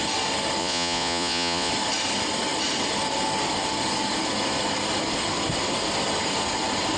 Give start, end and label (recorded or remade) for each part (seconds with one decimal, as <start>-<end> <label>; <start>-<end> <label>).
0.0-0.6 recorded; 0.6-1.7 remade; 1.7-7.0 recorded